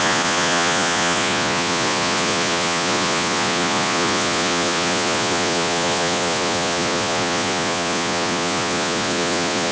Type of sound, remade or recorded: remade